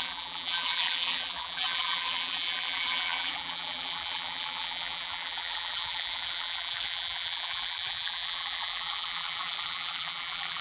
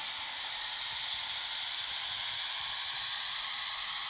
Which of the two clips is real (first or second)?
second